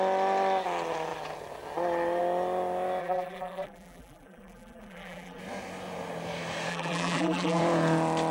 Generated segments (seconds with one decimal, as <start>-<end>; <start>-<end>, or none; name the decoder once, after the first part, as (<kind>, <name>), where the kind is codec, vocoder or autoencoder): 3.0-5.4 (vocoder, BigVGAN v2); 6.7-7.6